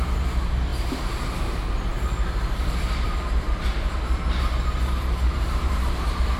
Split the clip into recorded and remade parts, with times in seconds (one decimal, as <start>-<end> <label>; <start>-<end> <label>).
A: 0.0-0.7 remade; 0.7-1.4 recorded; 1.4-6.4 remade